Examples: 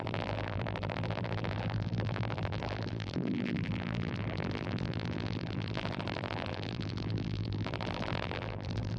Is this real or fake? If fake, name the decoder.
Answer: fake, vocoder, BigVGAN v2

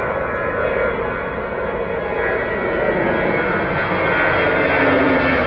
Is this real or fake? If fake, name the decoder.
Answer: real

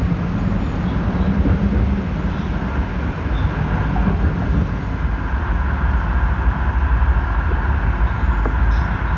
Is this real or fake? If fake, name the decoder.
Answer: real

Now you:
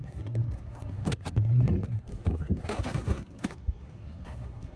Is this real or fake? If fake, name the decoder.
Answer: fake, codec, SNAC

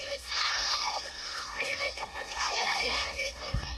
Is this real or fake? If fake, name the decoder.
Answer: fake, codec, SNAC